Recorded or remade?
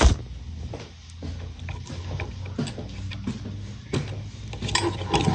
recorded